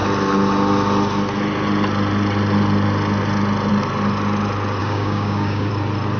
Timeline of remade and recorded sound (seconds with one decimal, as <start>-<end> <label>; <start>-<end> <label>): 0.0-4.8 recorded; 4.8-5.7 remade; 5.7-6.2 recorded